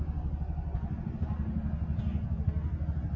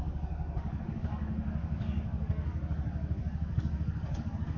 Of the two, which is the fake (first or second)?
second